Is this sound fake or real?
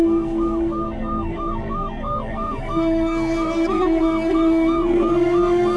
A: fake